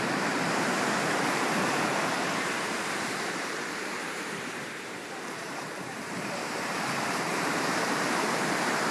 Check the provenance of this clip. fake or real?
fake